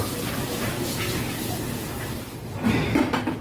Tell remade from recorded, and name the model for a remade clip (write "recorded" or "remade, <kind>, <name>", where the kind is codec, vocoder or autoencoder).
recorded